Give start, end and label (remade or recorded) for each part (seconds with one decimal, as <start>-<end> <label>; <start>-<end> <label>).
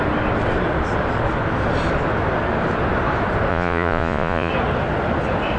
0.0-3.5 recorded; 3.5-4.5 remade; 4.5-5.6 recorded